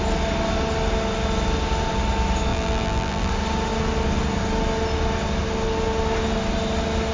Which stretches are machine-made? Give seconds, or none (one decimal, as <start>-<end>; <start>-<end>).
2.5-3.3